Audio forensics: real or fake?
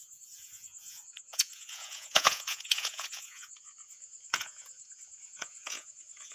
fake